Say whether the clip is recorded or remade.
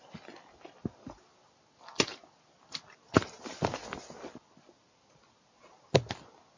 recorded